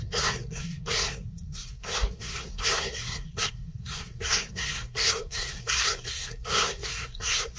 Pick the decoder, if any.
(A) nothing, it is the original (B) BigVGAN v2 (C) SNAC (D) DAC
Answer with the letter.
C